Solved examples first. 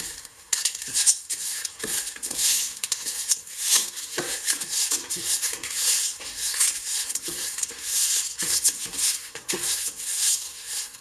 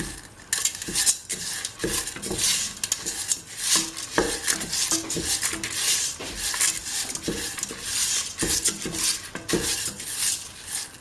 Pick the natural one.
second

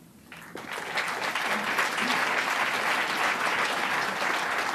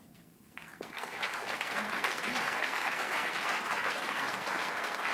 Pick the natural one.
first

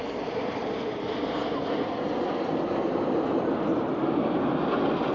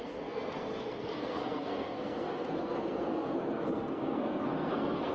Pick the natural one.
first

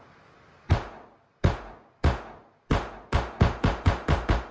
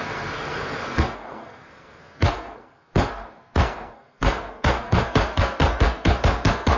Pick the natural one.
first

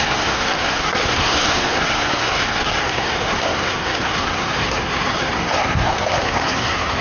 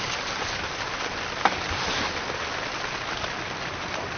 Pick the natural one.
second